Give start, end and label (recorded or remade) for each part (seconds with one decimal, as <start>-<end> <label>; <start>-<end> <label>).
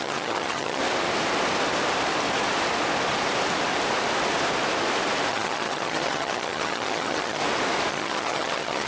0.0-0.8 remade; 0.8-5.3 recorded; 5.3-7.4 remade; 7.4-7.9 recorded; 7.9-8.9 remade